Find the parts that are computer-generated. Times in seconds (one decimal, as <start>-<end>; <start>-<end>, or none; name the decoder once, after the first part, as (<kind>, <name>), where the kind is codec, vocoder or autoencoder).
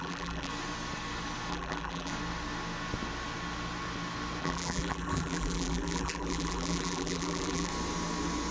0.0-0.5 (vocoder, BigVGAN v2); 1.5-2.1; 4.4-7.7